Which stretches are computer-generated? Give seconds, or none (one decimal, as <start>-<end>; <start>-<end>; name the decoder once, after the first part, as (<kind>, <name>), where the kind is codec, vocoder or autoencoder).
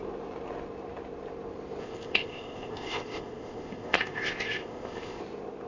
1.8-5.2 (codec, ZipCodec)